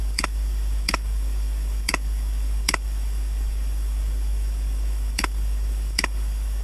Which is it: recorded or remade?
remade